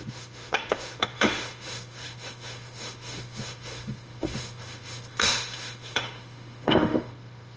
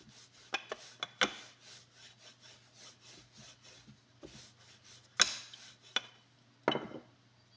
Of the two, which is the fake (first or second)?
first